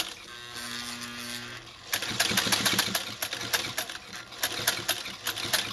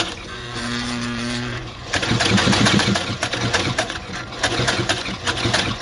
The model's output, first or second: second